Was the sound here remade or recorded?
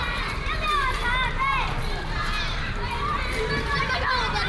remade